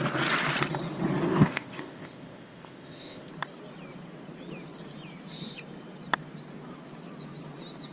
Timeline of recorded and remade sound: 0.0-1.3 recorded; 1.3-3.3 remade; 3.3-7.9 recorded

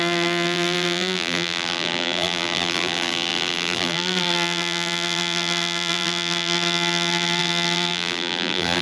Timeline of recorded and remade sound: 0.0-8.8 remade

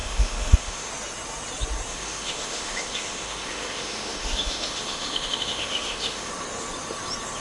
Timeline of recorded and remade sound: 0.0-0.9 remade; 0.9-1.9 recorded; 1.9-6.3 remade; 6.3-7.4 recorded

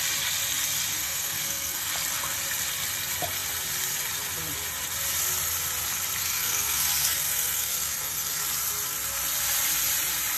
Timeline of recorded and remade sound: 0.0-0.9 recorded; 0.9-1.9 remade; 1.9-6.2 recorded; 6.2-8.4 remade; 8.4-10.4 recorded